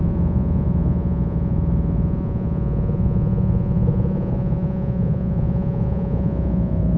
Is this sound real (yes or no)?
no